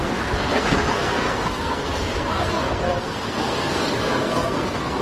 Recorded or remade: remade